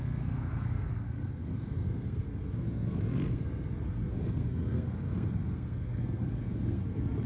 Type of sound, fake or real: fake